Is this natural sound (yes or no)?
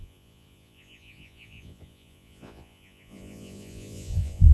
no